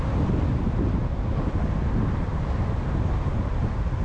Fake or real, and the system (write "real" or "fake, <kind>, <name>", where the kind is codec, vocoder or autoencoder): real